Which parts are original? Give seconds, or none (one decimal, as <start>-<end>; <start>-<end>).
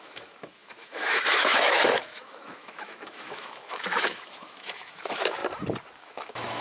5.4-6.0